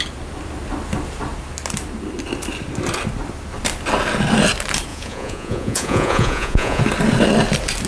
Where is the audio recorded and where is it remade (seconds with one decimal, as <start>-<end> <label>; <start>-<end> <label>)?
0.0-4.9 recorded; 4.9-6.8 remade; 6.8-7.9 recorded